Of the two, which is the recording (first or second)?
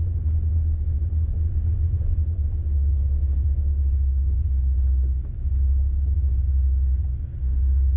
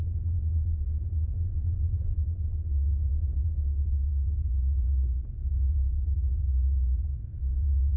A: first